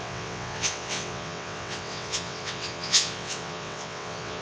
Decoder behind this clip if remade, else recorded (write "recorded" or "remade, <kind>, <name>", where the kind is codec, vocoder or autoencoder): remade, vocoder, WaveNeXt